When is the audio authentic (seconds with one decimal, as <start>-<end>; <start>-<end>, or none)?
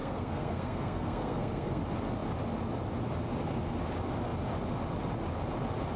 1.8-6.0